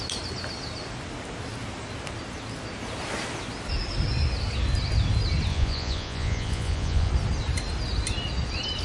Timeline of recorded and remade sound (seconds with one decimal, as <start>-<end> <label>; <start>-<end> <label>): 0.0-5.5 recorded; 5.5-7.1 remade; 7.1-8.8 recorded